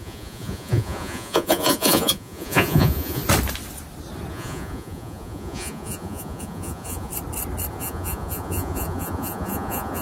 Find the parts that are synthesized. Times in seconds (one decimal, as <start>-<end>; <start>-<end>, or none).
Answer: 0.0-3.2; 4.3-7.1; 7.7-10.0

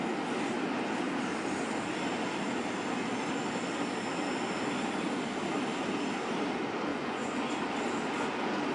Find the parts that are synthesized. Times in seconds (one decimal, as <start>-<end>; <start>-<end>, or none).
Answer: 6.9-7.6

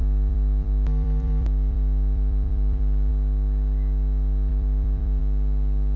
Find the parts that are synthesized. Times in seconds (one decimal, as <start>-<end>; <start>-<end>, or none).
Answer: 0.0-3.1; 4.5-5.2

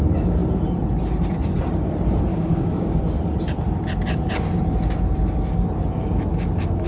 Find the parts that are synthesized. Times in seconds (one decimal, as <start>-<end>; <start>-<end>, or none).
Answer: 2.3-3.0

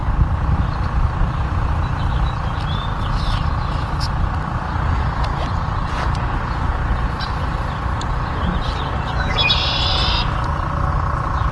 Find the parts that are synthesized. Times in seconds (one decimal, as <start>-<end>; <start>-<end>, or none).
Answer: 0.0-6.8; 7.5-10.0; 10.9-11.5

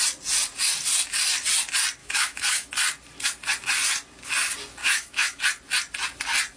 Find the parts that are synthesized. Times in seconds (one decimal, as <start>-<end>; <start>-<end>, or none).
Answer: 2.0-2.7; 4.8-5.4

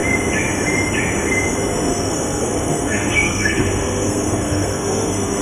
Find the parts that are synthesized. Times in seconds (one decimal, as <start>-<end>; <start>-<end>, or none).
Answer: 1.9-5.4